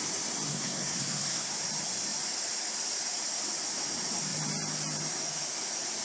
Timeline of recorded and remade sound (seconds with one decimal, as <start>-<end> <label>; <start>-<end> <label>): 0.0-0.5 recorded; 0.5-1.5 remade; 1.5-6.0 recorded